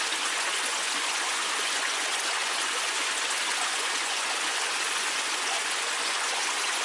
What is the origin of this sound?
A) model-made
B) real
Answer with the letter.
A